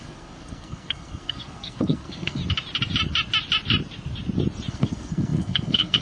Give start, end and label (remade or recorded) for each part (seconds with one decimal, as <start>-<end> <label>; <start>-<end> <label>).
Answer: 0.0-2.4 remade; 2.4-4.7 recorded; 4.7-6.0 remade